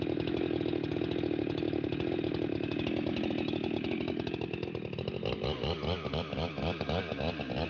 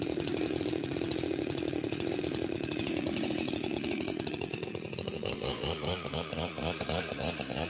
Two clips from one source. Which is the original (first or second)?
first